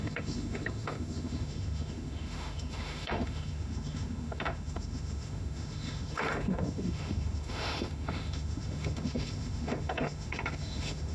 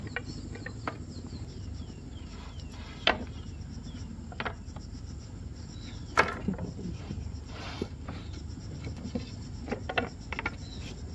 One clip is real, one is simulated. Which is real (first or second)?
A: second